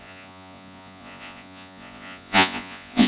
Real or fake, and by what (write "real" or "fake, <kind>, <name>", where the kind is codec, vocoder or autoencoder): fake, vocoder, Vocos